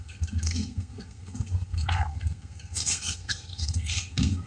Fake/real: fake